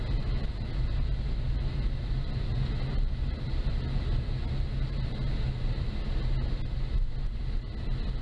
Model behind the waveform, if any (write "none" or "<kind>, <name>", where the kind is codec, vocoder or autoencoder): none